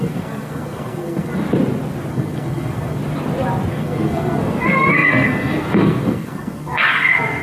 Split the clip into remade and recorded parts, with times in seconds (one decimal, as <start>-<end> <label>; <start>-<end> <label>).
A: 0.0-1.3 remade; 1.3-2.1 recorded; 2.1-3.0 remade; 3.0-3.7 recorded; 3.7-7.4 remade